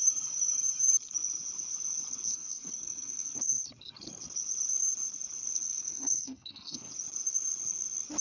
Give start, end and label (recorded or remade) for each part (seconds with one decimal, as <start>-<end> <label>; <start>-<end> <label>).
0.0-2.3 recorded; 2.3-3.4 remade; 3.4-5.5 recorded; 5.5-6.9 remade; 6.9-8.2 recorded